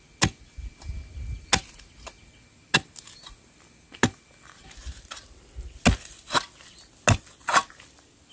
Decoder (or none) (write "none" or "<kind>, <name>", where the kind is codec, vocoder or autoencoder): none